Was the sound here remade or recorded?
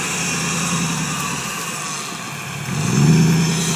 recorded